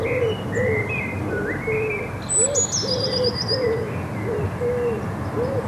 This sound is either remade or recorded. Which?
recorded